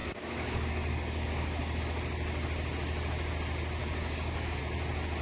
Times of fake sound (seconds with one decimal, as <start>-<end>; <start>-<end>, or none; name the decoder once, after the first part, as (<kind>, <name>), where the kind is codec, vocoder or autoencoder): 0.0-1.8 (codec, DAC); 3.8-4.6